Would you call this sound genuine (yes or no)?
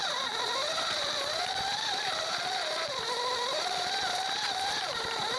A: no